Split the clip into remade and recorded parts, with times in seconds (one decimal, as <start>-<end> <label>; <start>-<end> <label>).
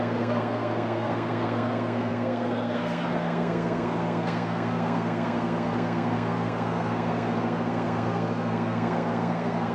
0.0-9.7 remade